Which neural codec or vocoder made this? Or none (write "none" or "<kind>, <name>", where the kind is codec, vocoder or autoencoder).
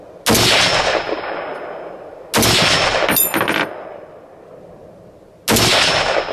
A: none